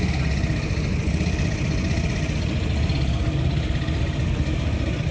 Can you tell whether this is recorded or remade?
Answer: recorded